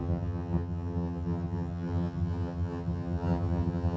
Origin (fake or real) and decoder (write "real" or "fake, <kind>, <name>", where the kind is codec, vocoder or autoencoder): fake, vocoder, HiFi-GAN